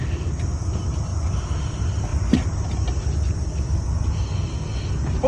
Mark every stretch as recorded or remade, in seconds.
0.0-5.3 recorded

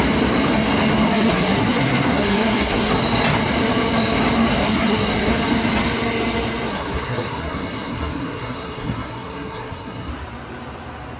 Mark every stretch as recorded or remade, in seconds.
0.0-1.1 recorded; 1.1-2.9 remade; 2.9-4.6 recorded; 4.6-5.3 remade; 5.3-6.7 recorded; 6.7-10.1 remade; 10.1-11.2 recorded

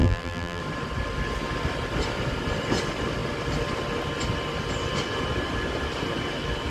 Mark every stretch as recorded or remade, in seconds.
0.0-0.6 remade; 0.6-6.7 recorded

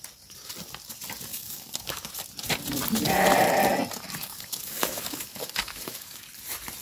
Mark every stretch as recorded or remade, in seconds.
0.0-1.3 recorded; 1.3-2.1 remade; 2.1-4.2 recorded; 4.2-6.3 remade; 6.3-6.8 recorded

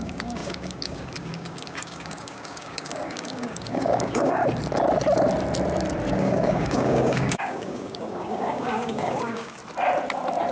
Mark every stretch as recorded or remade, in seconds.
0.0-4.4 remade; 4.4-6.1 recorded; 6.1-9.6 remade; 9.6-10.5 recorded

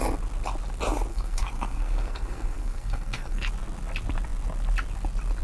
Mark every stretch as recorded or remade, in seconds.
0.0-1.1 recorded; 1.1-3.5 remade; 3.5-5.4 recorded